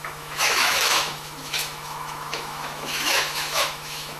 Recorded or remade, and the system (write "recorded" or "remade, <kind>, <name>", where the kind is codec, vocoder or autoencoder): remade, autoencoder, DAC-VAE